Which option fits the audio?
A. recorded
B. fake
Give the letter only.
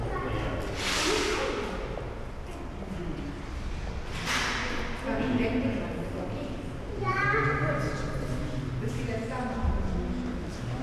A